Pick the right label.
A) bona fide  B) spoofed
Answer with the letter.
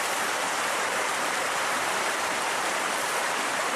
B